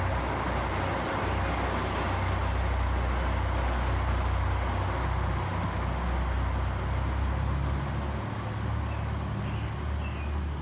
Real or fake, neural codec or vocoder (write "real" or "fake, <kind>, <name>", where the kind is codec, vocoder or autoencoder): real